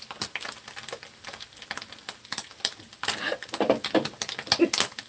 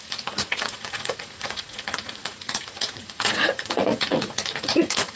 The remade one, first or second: second